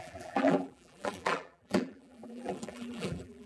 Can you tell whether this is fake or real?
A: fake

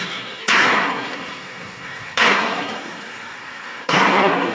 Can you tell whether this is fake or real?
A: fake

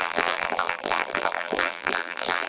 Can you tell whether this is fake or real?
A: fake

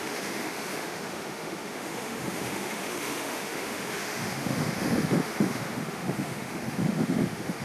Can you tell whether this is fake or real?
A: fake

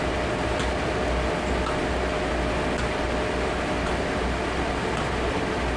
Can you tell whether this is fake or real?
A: real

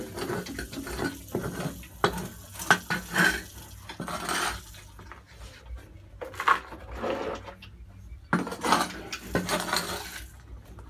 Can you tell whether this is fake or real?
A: real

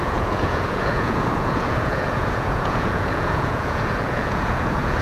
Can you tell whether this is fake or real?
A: fake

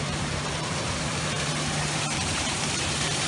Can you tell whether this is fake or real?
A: fake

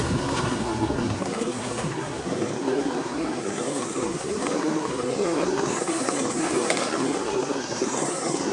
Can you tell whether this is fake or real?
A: fake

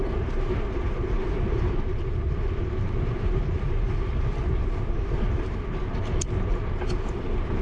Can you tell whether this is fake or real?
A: fake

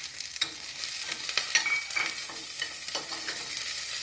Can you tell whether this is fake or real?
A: real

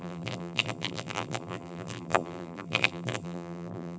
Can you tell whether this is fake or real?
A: fake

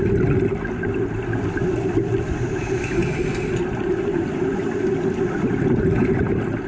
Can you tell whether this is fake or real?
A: real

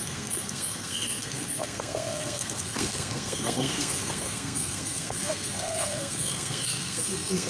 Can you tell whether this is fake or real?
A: fake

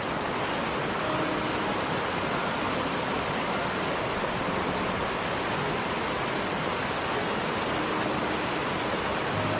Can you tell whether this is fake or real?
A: real